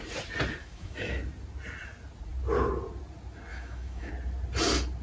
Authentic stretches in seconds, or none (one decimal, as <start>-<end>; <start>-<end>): 0.0-0.6; 1.2-3.5; 4.1-5.0